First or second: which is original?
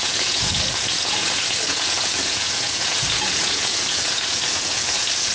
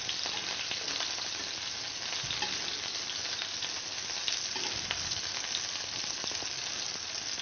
second